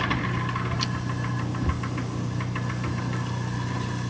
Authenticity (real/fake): real